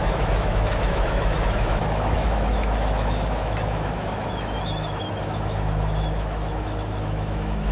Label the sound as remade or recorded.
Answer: remade